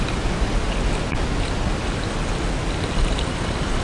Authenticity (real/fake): real